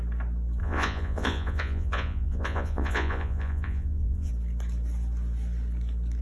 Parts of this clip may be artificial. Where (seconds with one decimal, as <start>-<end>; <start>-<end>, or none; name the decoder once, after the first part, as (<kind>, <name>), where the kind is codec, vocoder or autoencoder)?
0.6-4.3 (vocoder, Vocos)

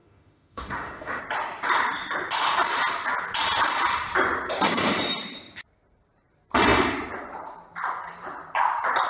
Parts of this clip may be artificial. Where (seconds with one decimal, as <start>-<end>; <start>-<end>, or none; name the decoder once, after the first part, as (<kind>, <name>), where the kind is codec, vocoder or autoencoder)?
0.0-1.2 (autoencoder, DAC-VAE)

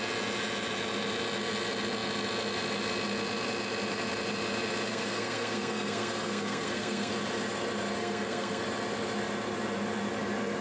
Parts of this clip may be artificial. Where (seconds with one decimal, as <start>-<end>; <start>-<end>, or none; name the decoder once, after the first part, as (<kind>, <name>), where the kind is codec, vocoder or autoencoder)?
4.9-7.1 (codec, SNAC); 8.0-8.6

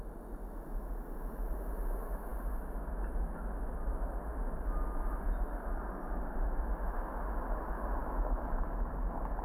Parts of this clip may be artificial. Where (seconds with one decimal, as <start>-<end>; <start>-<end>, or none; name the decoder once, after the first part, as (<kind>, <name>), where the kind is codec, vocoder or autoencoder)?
8.0-8.9 (autoencoder, DAC-VAE)

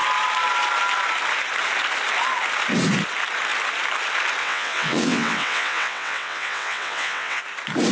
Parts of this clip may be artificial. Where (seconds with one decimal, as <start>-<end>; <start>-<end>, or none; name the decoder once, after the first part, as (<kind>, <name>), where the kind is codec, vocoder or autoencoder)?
4.4-7.4 (vocoder, WaveNeXt)

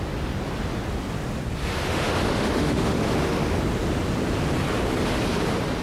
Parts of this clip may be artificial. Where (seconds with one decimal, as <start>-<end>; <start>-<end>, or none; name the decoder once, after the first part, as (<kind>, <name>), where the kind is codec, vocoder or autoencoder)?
1.6-3.6 (autoencoder, DAC-VAE)

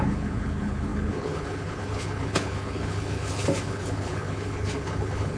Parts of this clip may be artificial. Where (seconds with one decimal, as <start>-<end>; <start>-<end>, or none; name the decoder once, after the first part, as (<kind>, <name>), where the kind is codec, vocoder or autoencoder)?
0.0-5.4 (codec, HILCodec)